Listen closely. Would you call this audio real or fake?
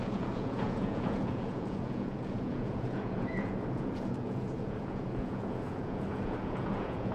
fake